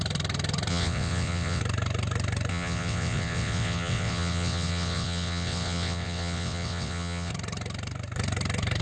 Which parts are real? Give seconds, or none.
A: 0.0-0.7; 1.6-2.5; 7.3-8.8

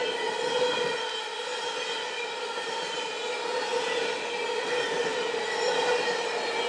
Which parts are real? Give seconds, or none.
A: 0.0-6.7

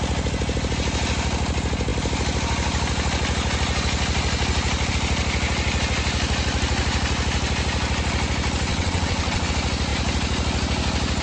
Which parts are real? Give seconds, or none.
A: 0.0-8.7; 9.5-11.2

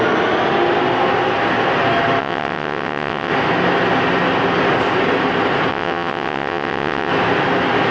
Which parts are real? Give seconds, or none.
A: 0.0-2.2; 3.3-5.7; 7.1-7.9

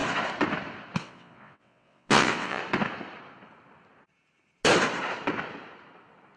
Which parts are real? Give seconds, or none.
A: 0.0-1.0; 2.6-6.4

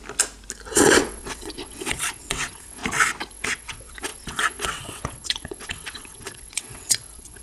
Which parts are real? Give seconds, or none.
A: 0.0-0.7; 2.8-3.3